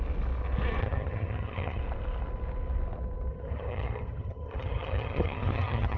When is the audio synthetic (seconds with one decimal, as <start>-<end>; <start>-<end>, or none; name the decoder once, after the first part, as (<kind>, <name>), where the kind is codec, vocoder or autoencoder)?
0.8-1.8 (vocoder, HiFi-GAN); 3.3-6.0